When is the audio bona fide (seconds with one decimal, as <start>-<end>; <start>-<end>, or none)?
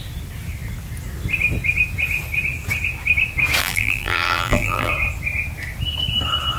0.0-3.6; 4.9-6.6